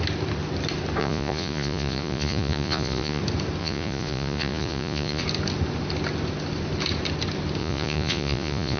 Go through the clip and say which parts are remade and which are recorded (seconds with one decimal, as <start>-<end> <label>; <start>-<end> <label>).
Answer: 0.0-1.0 recorded; 1.0-3.2 remade; 3.2-3.6 recorded; 3.6-5.2 remade; 5.2-7.6 recorded; 7.6-8.8 remade